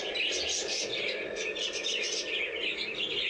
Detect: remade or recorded recorded